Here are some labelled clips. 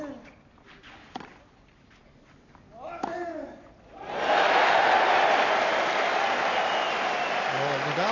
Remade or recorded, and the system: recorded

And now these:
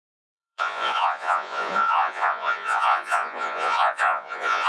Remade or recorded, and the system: remade, vocoder, Vocos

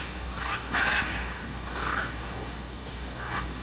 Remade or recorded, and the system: remade, codec, DAC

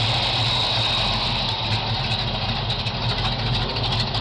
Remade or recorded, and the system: recorded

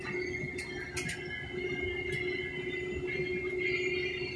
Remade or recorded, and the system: recorded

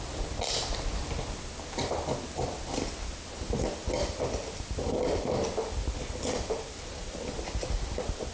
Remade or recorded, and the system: recorded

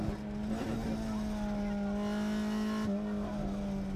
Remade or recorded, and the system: recorded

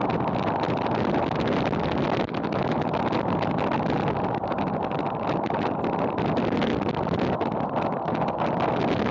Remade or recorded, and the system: recorded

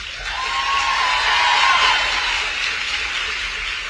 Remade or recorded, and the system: recorded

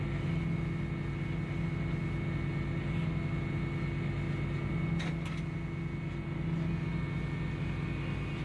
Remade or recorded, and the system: recorded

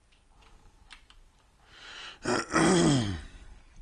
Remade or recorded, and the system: recorded